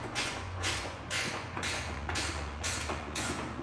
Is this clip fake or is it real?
fake